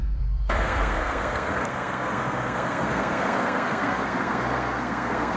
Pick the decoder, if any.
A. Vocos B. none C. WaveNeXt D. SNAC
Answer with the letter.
D